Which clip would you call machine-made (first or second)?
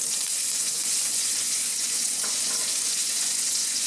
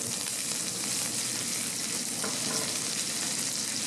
first